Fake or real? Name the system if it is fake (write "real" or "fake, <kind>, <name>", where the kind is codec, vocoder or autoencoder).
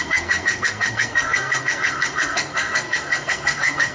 fake, codec, SNAC